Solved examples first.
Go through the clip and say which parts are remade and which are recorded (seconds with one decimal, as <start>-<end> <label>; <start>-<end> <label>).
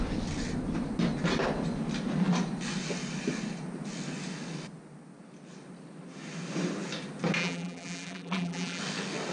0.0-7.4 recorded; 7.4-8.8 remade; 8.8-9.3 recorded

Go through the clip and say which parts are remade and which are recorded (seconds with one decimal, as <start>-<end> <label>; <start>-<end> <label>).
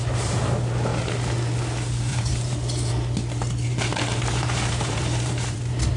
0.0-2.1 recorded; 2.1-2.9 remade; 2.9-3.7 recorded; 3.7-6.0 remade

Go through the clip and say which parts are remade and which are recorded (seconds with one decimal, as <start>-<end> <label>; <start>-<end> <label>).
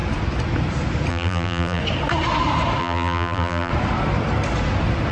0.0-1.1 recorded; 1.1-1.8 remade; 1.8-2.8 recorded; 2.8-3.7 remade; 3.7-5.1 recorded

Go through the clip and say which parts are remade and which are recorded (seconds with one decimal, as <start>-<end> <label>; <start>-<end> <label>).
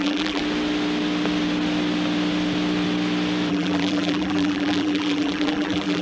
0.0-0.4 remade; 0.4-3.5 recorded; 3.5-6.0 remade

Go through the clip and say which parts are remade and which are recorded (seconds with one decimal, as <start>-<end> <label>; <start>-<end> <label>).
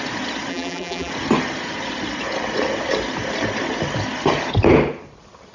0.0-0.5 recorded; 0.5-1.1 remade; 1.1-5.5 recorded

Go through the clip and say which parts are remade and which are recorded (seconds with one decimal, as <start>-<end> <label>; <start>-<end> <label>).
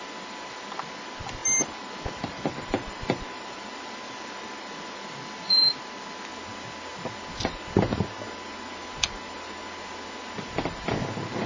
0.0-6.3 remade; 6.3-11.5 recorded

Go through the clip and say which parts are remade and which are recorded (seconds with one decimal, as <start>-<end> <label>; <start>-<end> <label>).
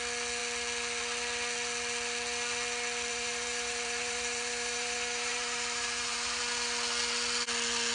0.0-3.1 recorded; 3.1-6.4 remade; 6.4-7.9 recorded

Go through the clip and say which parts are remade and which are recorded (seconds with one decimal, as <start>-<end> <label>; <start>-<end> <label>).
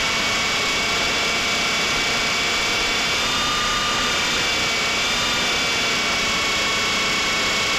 0.0-4.5 remade; 4.5-7.8 recorded